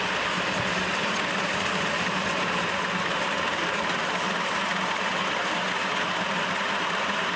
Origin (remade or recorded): recorded